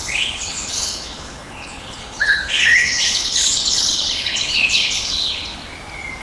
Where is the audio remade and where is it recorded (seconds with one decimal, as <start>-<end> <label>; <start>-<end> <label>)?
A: 0.0-5.6 remade; 5.6-6.2 recorded